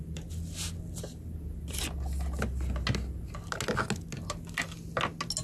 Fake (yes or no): no